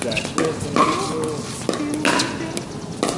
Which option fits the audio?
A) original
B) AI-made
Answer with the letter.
A